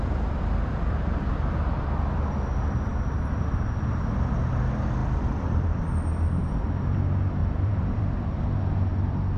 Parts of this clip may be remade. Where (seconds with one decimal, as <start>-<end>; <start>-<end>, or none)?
5.0-5.8; 7.4-8.3